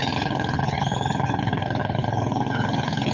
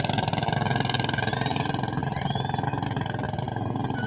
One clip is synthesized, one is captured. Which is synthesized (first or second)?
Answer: first